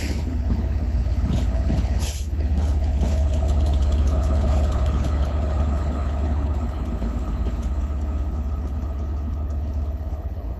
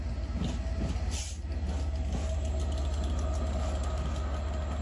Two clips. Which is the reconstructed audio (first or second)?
first